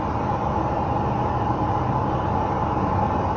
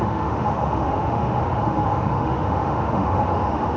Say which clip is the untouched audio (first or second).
first